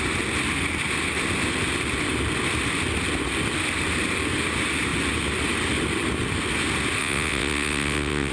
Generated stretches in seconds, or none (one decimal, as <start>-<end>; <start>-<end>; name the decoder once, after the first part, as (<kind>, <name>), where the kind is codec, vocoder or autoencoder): 7.0-8.3 (vocoder, WaveNeXt)